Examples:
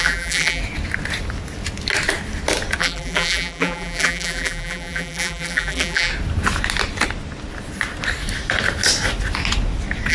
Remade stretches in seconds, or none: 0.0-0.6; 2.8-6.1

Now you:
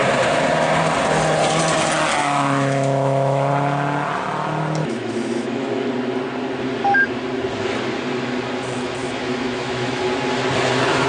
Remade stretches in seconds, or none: 2.2-3.5; 4.8-5.9; 9.0-10.0

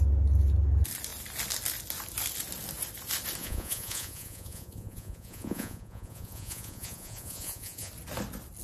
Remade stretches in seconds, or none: 3.4-7.9

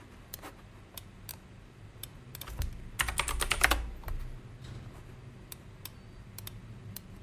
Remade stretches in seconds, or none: none

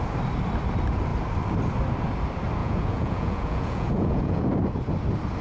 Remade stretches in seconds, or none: 2.6-4.5

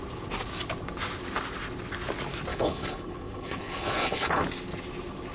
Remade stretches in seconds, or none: 2.5-4.4

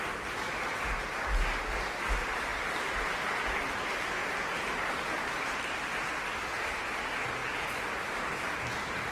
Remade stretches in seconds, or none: 4.2-5.1; 6.3-6.9; 7.4-8.3